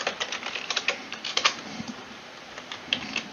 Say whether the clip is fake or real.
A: fake